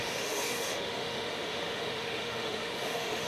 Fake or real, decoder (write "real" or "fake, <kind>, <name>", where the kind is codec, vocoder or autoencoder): fake, autoencoder, DAC-VAE